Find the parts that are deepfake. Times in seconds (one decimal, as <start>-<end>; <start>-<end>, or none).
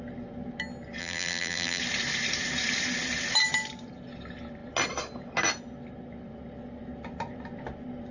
1.0-1.8